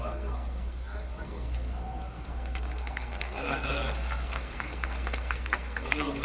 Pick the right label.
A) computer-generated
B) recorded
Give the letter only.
A